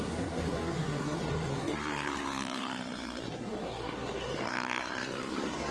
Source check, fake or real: fake